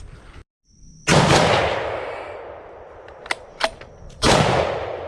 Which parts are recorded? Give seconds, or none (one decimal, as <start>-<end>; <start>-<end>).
0.4-3.5

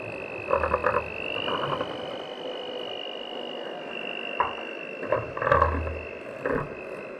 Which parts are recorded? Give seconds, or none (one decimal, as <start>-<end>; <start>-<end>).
0.0-7.2

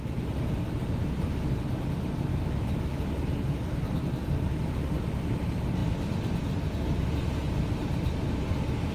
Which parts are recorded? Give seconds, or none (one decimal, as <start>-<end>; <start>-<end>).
0.0-2.3; 2.9-8.9